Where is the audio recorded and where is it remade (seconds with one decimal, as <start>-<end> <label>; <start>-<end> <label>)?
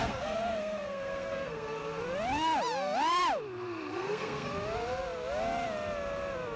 0.0-1.8 remade; 1.8-3.9 recorded; 3.9-4.5 remade; 4.5-6.6 recorded